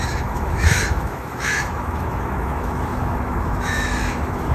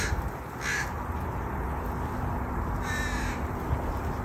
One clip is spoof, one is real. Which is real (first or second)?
second